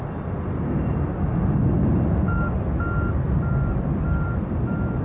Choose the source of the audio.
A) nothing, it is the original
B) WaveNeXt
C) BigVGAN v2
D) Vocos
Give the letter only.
A